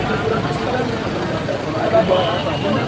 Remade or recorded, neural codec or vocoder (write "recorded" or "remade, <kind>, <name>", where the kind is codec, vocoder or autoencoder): recorded